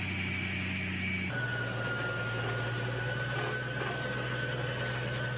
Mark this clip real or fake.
real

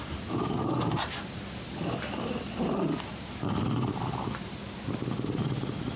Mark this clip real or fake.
real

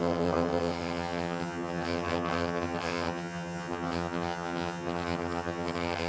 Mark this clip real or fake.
fake